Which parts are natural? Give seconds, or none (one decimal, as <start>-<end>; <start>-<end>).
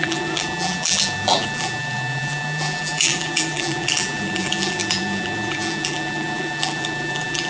none